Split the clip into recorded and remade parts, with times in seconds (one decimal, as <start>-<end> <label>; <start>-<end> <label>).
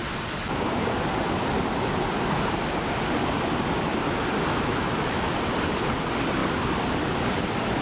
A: 0.0-4.5 recorded; 4.5-5.3 remade; 5.3-7.8 recorded